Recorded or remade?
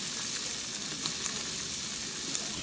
recorded